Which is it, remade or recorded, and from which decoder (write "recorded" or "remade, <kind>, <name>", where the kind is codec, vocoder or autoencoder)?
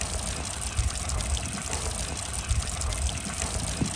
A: recorded